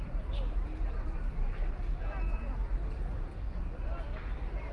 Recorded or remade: recorded